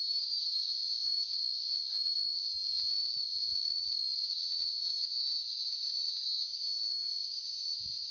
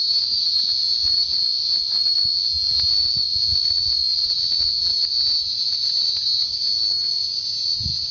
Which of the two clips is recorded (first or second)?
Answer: second